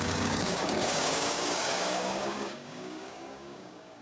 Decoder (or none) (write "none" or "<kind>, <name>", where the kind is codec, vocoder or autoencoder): codec, DAC